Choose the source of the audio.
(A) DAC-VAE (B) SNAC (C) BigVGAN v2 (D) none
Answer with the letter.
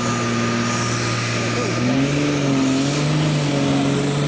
D